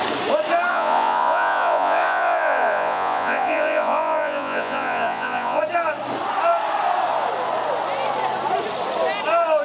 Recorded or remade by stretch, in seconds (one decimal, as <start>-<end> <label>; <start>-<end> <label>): 0.0-0.7 recorded; 0.7-5.6 remade; 5.6-9.6 recorded